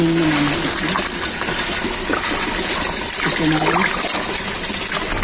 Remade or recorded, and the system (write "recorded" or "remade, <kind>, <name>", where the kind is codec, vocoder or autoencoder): recorded